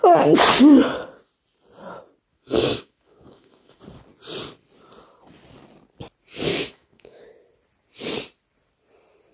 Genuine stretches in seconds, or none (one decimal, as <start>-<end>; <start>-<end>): 0.0-2.3; 3.8-6.5; 7.2-9.3